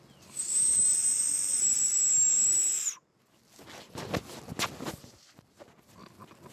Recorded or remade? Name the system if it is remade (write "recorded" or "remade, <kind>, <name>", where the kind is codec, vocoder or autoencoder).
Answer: recorded